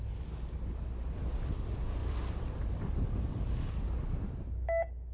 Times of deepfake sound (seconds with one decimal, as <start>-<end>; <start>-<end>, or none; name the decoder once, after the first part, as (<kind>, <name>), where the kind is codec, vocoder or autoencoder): 2.0-3.5 (vocoder, BigVGAN v2)

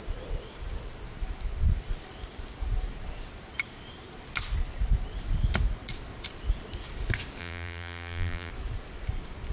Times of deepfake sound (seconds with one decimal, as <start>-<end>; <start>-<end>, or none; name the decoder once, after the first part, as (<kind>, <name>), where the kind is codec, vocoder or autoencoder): 7.4-8.5 (vocoder, BigVGAN v2)

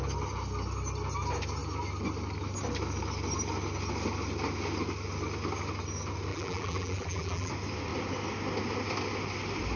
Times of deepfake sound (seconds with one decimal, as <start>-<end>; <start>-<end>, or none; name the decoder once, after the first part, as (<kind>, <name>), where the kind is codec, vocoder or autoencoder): 6.3-7.5 (vocoder, BigVGAN v2)

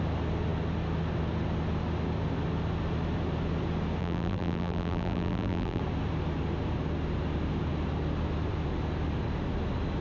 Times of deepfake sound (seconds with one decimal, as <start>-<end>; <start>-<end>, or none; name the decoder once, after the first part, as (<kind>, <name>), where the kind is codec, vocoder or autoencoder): 4.0-5.8 (vocoder, BigVGAN v2)

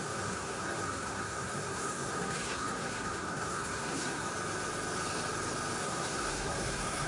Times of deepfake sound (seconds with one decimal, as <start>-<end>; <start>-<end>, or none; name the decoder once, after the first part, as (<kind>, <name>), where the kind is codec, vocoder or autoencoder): 0.0-4.3 (codec, SNAC); 5.8-7.1

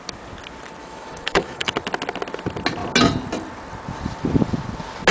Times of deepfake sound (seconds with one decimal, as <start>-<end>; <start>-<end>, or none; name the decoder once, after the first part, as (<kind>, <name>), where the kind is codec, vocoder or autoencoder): 0.8-1.7 (autoencoder, DAC-VAE)

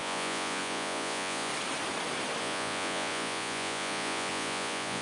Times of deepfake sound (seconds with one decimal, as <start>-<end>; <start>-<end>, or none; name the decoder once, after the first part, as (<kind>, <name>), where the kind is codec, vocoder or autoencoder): 0.0-1.5 (vocoder, Vocos); 2.4-5.0

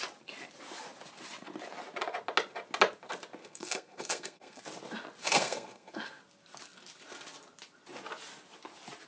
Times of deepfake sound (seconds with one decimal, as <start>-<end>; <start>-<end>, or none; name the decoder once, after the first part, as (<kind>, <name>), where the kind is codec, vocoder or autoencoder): 3.4-4.6 (codec, SNAC); 5.2-6.2